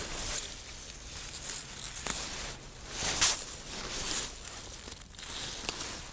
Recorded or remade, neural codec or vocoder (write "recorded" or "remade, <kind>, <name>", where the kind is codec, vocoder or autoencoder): recorded